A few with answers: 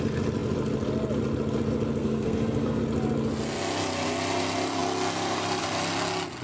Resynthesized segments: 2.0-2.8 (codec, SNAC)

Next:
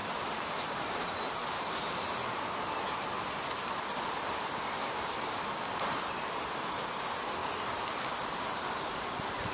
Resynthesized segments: 0.0-2.7 (vocoder, BigVGAN v2); 4.8-6.8

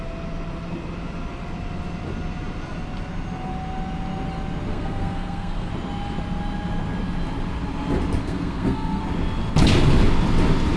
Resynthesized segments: 4.7-5.7 (codec, SNAC); 8.2-9.0

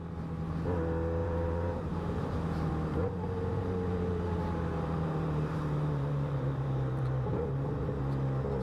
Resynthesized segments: 1.2-2.7 (vocoder, BigVGAN v2); 3.5-7.9